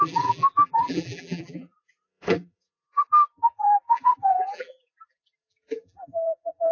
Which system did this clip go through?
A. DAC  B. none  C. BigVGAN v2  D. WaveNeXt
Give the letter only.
C